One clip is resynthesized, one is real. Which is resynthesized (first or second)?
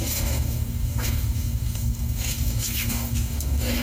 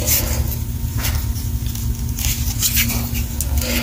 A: first